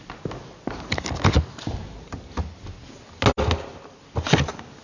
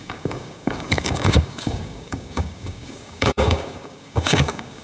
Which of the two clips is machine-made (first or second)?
second